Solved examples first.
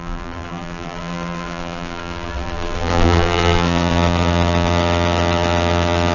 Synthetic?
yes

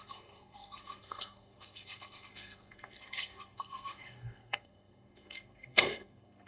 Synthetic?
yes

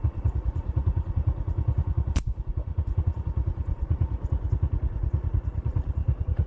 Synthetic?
yes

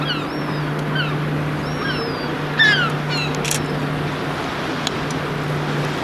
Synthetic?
no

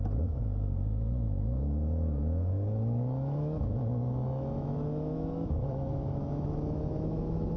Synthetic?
yes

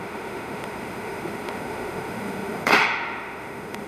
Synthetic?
yes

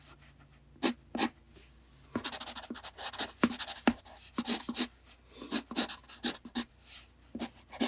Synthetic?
no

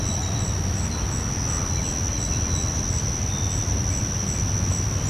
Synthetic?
no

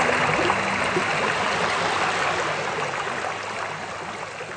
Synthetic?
no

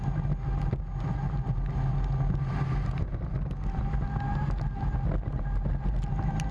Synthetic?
no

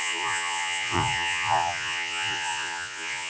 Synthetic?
yes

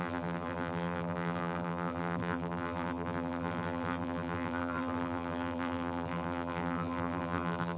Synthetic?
yes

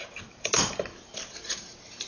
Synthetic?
yes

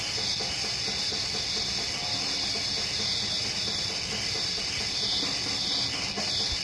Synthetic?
no